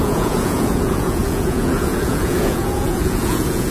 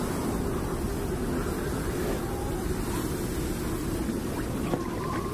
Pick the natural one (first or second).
second